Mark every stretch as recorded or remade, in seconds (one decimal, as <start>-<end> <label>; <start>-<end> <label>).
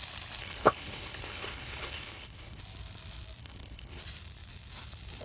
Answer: 0.0-0.4 recorded; 0.4-2.6 remade; 2.6-3.4 recorded; 3.4-4.0 remade; 4.0-5.2 recorded